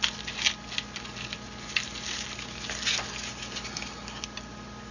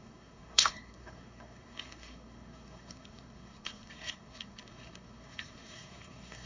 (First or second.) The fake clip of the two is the second